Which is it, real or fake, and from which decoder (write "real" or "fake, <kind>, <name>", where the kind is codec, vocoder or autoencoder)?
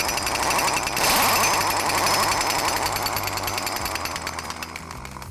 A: real